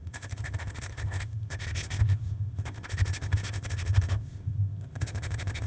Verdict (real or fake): fake